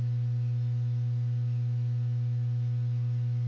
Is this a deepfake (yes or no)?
no